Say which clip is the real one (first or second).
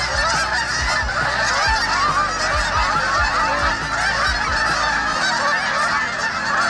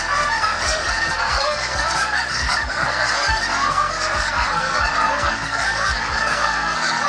first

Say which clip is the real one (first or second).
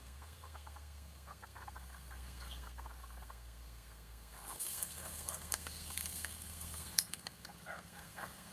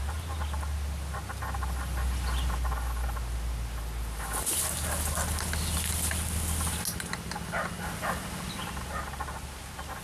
second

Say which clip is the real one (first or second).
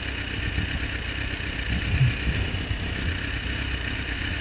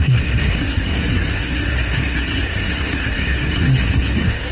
first